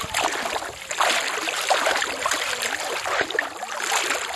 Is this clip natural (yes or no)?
yes